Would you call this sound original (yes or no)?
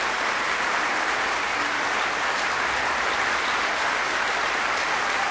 yes